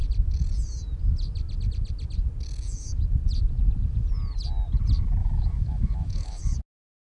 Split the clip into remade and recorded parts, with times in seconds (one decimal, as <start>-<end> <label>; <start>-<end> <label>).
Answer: 0.0-5.2 recorded; 5.2-6.4 remade; 6.4-7.1 recorded